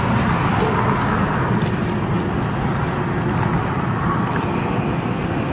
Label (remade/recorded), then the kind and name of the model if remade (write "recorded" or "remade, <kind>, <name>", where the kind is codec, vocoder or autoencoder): recorded